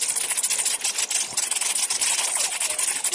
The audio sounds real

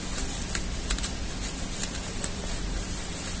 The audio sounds real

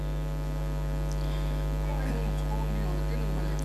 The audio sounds real